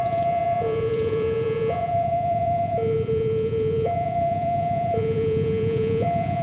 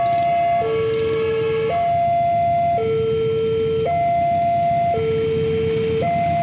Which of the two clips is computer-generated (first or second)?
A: first